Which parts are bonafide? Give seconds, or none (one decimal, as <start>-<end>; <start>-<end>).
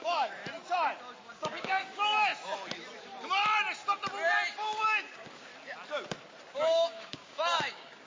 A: 0.4-1.3; 2.3-4.5; 5.5-6.5